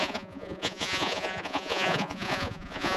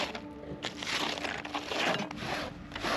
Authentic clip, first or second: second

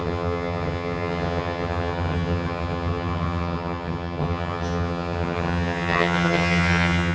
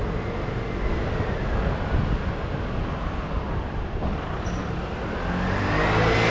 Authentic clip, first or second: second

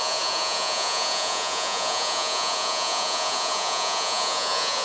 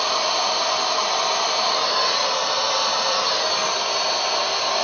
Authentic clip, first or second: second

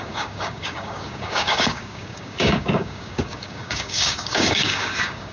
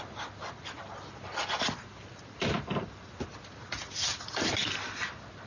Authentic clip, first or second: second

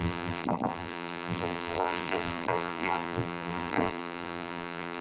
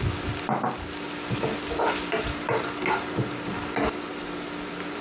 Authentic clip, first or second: second